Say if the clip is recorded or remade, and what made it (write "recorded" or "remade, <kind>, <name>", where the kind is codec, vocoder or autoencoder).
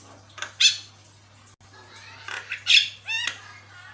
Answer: recorded